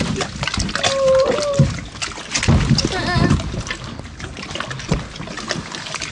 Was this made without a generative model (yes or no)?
yes